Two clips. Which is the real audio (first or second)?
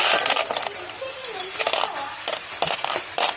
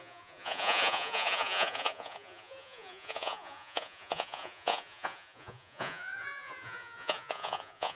first